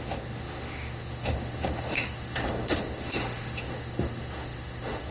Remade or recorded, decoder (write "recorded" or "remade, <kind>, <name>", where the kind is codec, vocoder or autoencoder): remade, autoencoder, DAC-VAE